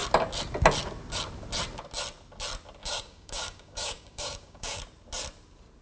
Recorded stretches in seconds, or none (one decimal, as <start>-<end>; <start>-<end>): 0.0-2.8; 4.8-5.8